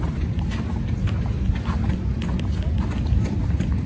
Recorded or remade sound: recorded